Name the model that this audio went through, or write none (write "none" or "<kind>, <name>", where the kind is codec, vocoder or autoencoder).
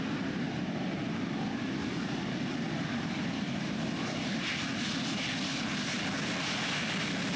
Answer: none